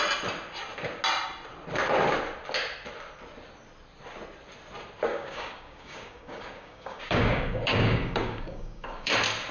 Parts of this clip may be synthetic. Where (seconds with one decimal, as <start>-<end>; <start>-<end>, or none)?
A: 5.1-9.1

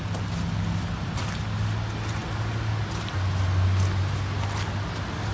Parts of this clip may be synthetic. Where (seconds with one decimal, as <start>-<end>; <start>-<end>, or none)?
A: none